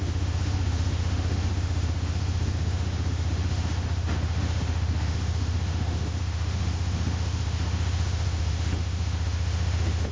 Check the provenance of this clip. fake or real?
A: fake